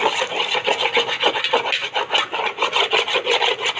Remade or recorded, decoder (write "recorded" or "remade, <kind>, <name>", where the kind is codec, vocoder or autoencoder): recorded